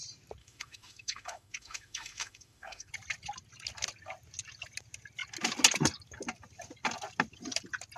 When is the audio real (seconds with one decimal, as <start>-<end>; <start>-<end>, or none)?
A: 0.0-0.4; 2.9-8.0